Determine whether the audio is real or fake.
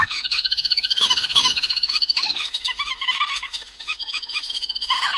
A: fake